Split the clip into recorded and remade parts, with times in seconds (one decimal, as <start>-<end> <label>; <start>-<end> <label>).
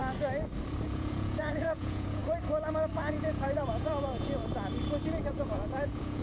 0.0-0.8 recorded; 0.8-2.2 remade; 2.2-3.1 recorded; 3.1-4.4 remade; 4.4-5.3 recorded; 5.3-6.2 remade